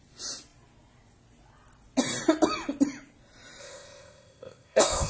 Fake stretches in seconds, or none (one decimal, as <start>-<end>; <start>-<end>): 3.6-5.1